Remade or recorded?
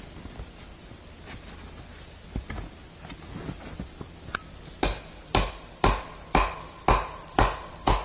recorded